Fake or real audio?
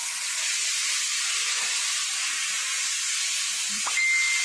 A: real